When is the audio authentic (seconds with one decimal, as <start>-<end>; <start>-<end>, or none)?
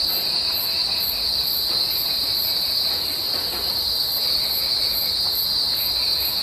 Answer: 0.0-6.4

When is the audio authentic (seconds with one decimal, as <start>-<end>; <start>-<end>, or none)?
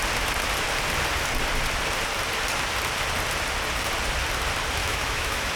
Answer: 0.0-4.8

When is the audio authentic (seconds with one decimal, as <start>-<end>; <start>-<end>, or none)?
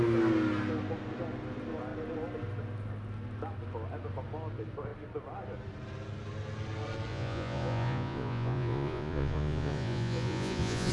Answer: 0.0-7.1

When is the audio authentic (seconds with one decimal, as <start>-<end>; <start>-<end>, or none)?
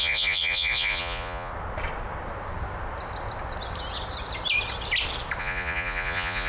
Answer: 1.5-5.4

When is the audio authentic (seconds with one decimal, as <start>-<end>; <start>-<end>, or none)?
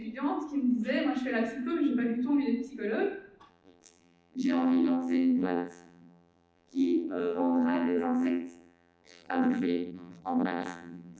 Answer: 0.0-3.5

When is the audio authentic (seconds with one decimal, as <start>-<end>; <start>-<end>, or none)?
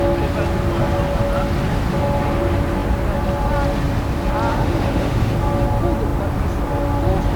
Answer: 0.0-4.5; 5.3-7.4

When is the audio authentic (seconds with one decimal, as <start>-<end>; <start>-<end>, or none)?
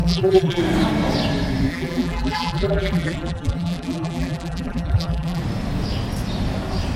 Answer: 0.6-1.7; 5.4-7.0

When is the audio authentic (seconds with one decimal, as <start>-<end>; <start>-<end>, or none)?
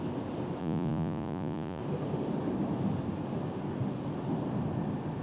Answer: 0.0-0.6; 1.8-5.2